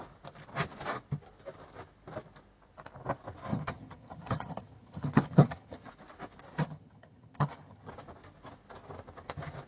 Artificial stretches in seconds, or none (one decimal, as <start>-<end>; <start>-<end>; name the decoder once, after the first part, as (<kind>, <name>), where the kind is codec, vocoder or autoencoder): 3.5-5.9 (vocoder, HiFi-GAN); 6.5-7.9